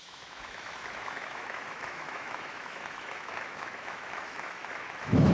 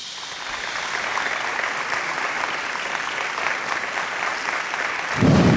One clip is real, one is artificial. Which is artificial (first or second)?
first